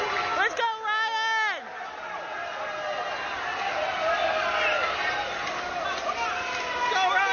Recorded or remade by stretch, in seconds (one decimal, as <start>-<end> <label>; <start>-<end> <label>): 0.0-7.3 recorded

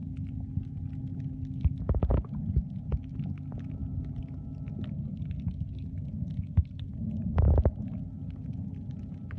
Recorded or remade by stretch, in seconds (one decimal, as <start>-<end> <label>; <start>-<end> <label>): 0.0-9.4 recorded

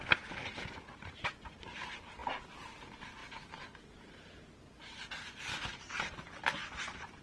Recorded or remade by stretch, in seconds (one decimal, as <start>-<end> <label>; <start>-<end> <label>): 0.0-7.2 recorded

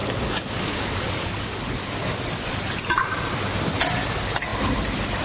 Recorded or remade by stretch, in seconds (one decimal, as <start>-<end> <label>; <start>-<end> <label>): 0.0-1.6 remade; 1.6-5.2 recorded

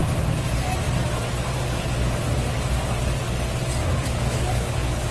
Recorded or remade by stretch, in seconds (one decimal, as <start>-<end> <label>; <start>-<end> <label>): 0.0-3.8 recorded; 3.8-5.1 remade

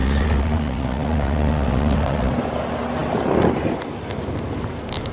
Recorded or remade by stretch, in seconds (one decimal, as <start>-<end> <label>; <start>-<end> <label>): 0.0-2.3 remade; 2.3-5.1 recorded